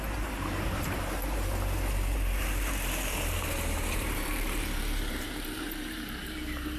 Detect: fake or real fake